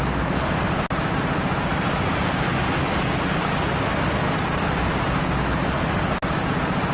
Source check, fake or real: real